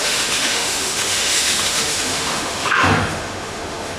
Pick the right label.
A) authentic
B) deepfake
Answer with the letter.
B